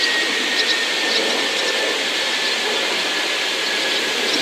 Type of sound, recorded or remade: recorded